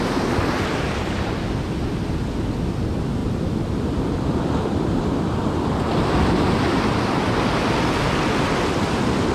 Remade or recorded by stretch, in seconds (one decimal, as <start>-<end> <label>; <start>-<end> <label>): 0.0-3.2 recorded; 3.2-5.1 remade; 5.1-9.3 recorded